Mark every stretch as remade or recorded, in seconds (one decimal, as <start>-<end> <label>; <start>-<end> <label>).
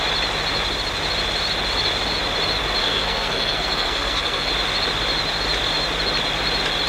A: 0.0-2.8 recorded; 2.8-4.5 remade; 4.5-6.9 recorded